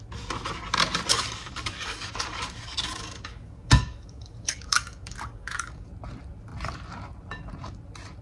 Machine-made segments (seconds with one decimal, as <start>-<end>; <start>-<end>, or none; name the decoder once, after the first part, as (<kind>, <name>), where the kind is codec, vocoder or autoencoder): 1.1-5.9 (codec, DAC)